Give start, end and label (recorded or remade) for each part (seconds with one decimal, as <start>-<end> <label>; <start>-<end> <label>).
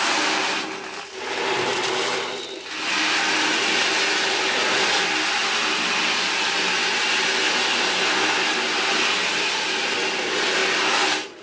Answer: 0.0-11.4 recorded